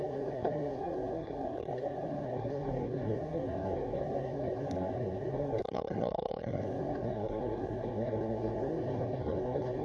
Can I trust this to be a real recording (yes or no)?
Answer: no